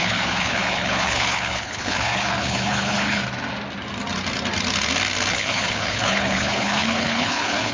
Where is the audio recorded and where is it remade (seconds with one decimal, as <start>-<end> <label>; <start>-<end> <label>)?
0.0-3.2 remade; 3.2-5.3 recorded; 5.3-7.7 remade